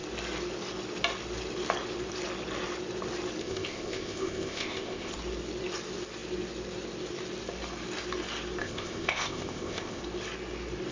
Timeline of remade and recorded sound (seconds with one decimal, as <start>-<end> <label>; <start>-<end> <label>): 0.0-3.4 recorded; 3.4-5.1 remade; 5.1-8.6 recorded; 8.6-10.0 remade; 10.0-10.9 recorded